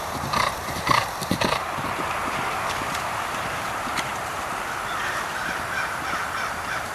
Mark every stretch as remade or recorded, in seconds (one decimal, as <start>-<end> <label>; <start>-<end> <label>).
0.0-4.5 remade; 4.5-5.1 recorded; 5.1-6.9 remade